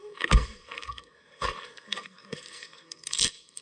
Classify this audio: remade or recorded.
remade